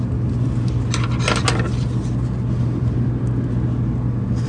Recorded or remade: recorded